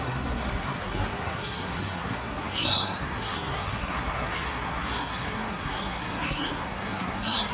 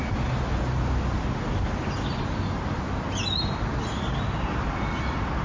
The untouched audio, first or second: second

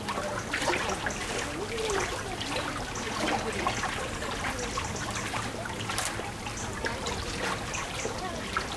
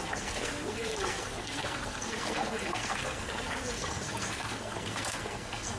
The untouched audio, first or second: first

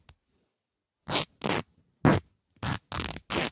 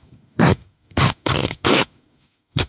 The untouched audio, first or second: first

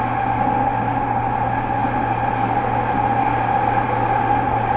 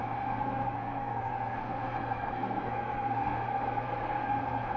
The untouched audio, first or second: first